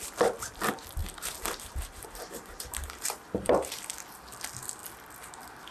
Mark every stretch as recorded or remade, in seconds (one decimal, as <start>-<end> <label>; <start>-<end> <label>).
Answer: 0.0-1.0 recorded; 1.0-3.7 remade; 3.7-5.7 recorded